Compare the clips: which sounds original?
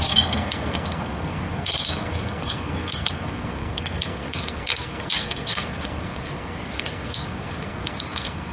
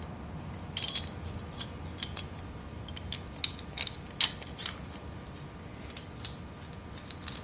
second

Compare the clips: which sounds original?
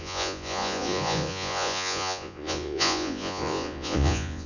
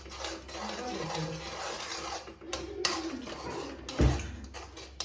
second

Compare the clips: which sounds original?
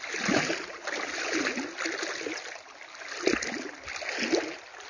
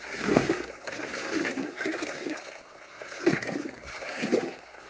first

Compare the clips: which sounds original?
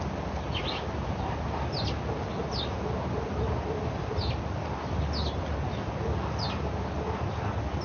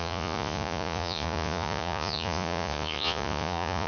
first